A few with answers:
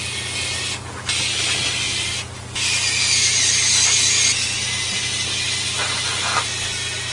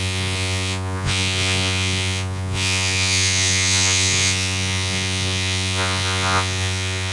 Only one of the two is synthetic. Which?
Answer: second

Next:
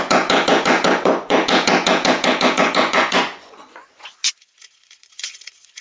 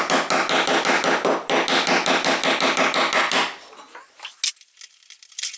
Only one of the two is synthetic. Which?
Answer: first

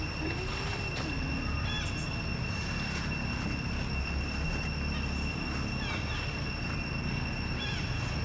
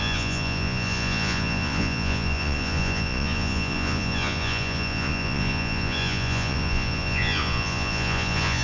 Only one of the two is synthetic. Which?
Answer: second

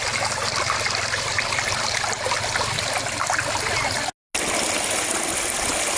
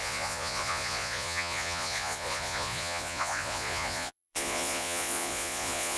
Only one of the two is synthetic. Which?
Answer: second